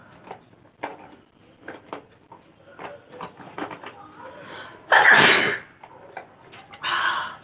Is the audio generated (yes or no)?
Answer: no